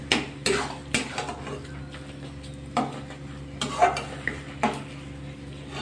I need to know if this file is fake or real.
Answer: real